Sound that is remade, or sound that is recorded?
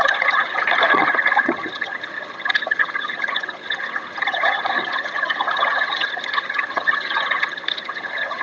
remade